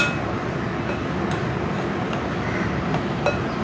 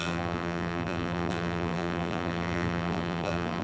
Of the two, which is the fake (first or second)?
second